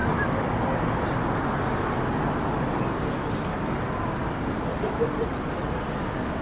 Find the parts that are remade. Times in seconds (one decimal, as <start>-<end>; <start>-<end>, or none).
none